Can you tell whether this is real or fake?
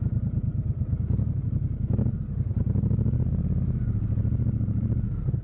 fake